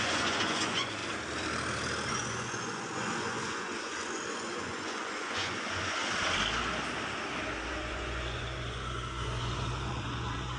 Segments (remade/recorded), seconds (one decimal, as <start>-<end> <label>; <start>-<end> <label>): 0.0-1.0 remade; 1.0-2.1 recorded; 2.1-6.0 remade; 6.0-7.7 recorded; 7.7-10.6 remade